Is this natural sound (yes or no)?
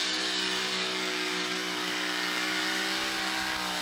no